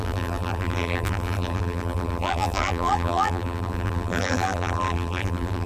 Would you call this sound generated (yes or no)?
yes